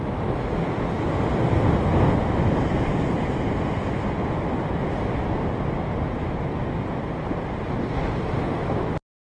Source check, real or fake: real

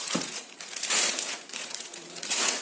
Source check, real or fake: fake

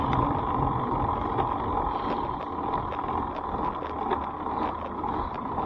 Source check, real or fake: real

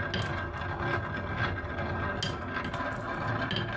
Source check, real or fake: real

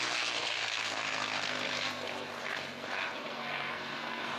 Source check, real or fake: fake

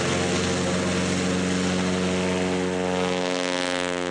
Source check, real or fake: real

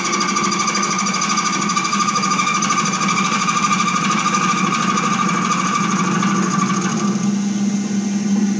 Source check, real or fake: real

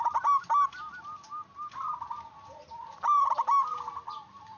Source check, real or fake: real